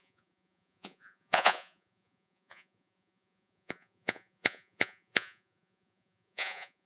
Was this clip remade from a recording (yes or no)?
yes